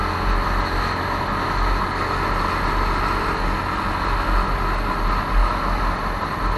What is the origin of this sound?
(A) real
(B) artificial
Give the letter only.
A